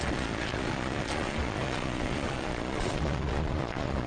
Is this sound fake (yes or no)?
yes